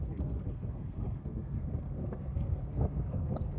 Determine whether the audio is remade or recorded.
remade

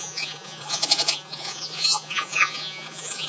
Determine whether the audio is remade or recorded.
remade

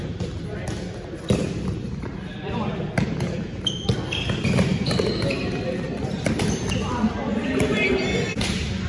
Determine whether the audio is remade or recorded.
recorded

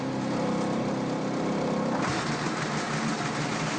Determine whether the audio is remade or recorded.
recorded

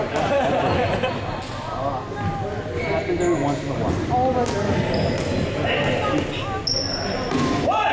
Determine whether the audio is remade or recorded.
recorded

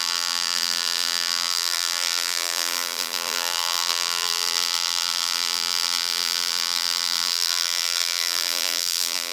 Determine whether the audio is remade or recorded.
remade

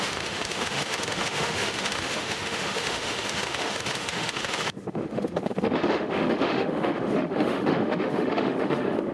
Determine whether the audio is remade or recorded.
remade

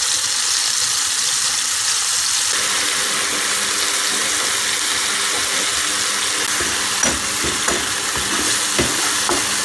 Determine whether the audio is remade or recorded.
recorded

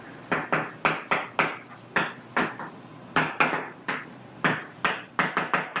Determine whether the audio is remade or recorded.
recorded